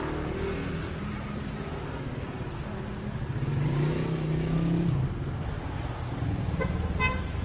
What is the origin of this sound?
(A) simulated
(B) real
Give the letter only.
B